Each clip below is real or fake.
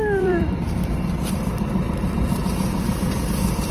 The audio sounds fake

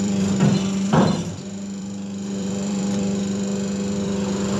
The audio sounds fake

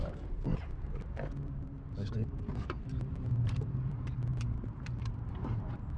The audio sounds fake